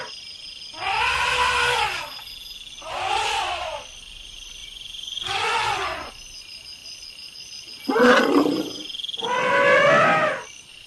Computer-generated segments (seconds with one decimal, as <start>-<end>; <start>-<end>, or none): 4.6-6.1